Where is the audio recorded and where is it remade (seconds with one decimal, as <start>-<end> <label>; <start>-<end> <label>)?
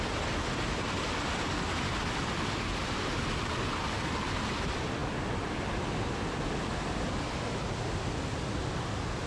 0.0-9.3 recorded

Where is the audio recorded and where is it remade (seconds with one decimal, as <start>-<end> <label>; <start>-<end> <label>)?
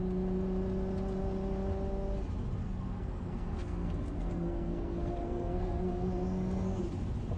0.0-2.6 recorded; 2.6-6.8 remade; 6.8-7.4 recorded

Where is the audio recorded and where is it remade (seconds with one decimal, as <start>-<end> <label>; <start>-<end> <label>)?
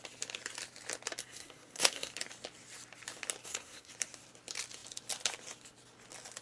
0.0-1.2 recorded; 1.2-2.1 remade; 2.1-3.4 recorded; 3.4-3.9 remade; 3.9-6.4 recorded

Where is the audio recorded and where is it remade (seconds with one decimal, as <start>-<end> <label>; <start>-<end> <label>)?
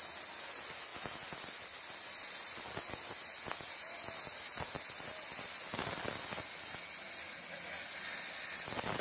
0.0-9.0 recorded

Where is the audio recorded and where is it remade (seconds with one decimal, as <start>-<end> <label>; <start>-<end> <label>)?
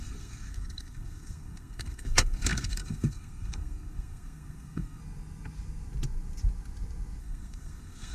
0.0-5.0 remade; 5.0-7.2 recorded; 7.2-8.1 remade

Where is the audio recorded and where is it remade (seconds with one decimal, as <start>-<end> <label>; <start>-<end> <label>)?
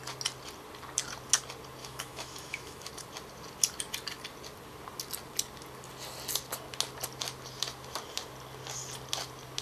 0.0-1.8 recorded; 1.8-2.9 remade; 2.9-9.6 recorded